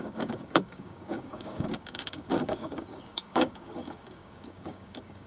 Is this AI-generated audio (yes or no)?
yes